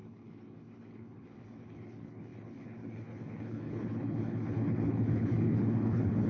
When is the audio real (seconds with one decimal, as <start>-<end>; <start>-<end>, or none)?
none